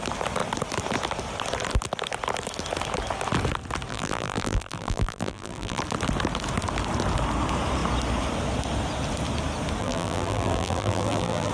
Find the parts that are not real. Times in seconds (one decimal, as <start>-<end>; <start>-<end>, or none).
3.9-5.8; 9.8-11.5